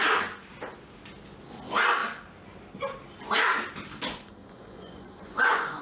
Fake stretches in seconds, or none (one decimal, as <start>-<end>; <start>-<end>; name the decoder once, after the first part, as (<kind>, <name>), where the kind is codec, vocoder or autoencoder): 4.4-5.8 (vocoder, Vocos)